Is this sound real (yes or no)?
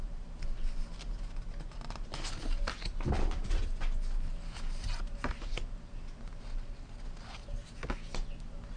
yes